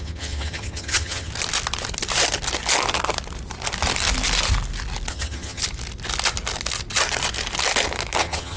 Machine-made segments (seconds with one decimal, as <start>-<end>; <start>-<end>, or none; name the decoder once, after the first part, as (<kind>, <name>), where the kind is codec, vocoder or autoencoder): 0.0-1.3 (vocoder, HiFi-GAN); 5.1-5.6; 8.2-8.6